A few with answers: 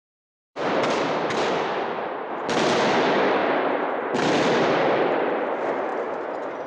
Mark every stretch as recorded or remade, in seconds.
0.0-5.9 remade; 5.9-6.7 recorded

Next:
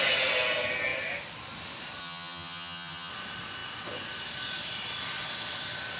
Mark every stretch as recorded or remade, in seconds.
0.0-2.0 recorded; 2.0-3.1 remade; 3.1-6.0 recorded

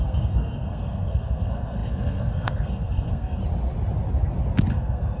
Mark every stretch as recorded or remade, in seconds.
0.0-3.4 remade; 3.4-4.7 recorded; 4.7-5.2 remade

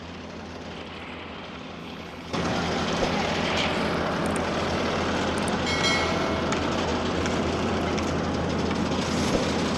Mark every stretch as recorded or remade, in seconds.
0.0-1.8 recorded; 1.8-2.5 remade; 2.5-9.8 recorded

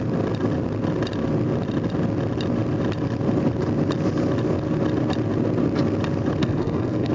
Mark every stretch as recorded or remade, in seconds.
0.0-6.4 recorded; 6.4-7.1 remade